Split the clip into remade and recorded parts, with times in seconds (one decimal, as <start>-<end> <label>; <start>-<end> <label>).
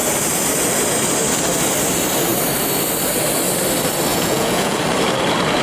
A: 0.0-4.1 recorded; 4.1-4.8 remade; 4.8-5.6 recorded